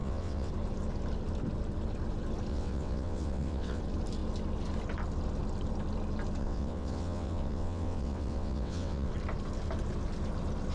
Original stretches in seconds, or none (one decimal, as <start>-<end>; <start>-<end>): 0.5-2.5; 3.8-6.4; 9.1-10.7